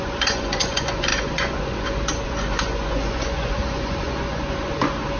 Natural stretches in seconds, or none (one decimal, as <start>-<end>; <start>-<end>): none